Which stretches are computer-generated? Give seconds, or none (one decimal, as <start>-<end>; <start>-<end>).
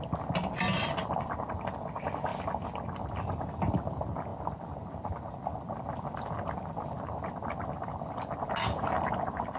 none